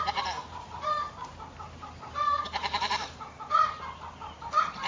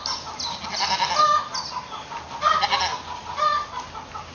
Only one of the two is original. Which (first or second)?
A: second